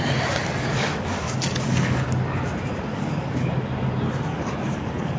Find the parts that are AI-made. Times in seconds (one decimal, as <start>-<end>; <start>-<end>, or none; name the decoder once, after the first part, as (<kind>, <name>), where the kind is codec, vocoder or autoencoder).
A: 0.4-2.1 (codec, DAC); 2.9-3.5; 4.3-5.2